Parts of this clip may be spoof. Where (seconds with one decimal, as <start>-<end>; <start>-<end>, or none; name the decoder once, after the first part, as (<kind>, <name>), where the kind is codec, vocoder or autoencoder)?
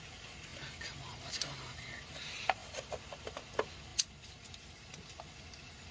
none